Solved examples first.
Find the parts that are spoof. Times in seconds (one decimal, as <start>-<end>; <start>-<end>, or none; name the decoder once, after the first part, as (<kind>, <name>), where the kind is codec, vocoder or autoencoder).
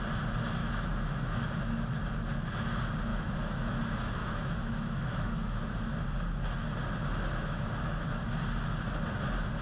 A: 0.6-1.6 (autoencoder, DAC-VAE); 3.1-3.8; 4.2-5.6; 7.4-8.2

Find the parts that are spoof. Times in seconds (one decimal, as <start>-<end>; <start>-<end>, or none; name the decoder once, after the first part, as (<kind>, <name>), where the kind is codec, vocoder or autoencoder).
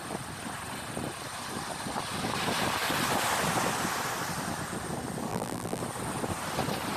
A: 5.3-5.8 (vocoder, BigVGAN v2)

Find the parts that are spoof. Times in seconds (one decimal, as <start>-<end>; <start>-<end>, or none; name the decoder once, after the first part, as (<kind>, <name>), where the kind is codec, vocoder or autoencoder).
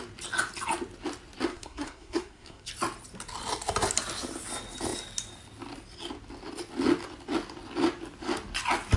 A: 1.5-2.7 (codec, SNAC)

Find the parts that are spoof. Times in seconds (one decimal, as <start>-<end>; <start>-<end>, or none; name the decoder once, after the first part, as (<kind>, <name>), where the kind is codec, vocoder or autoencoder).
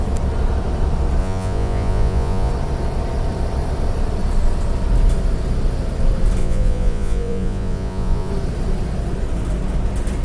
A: 1.2-2.5 (vocoder, Vocos); 6.4-8.3